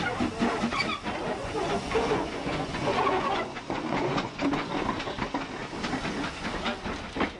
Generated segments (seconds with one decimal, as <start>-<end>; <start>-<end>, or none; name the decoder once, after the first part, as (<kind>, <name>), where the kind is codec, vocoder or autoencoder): 1.4-4.7 (vocoder, Vocos)